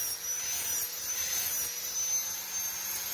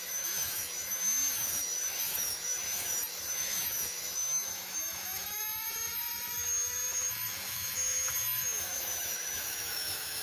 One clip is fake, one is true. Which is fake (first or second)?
second